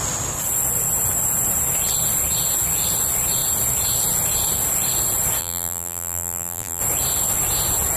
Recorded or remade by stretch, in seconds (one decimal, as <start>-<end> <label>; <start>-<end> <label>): 0.0-5.4 recorded; 5.4-6.8 remade; 6.8-8.0 recorded